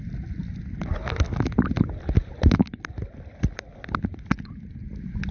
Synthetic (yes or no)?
no